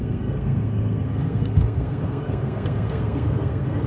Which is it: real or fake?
fake